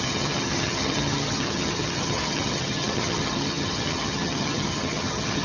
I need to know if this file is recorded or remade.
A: remade